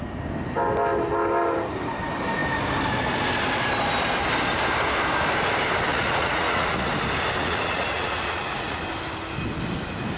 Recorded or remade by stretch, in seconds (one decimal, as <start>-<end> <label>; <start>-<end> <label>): 0.0-5.9 recorded; 5.9-6.9 remade; 6.9-7.4 recorded; 7.4-8.8 remade; 8.8-10.2 recorded

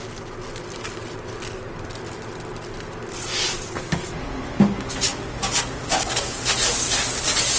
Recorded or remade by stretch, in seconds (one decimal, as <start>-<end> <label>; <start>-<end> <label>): 0.0-7.6 recorded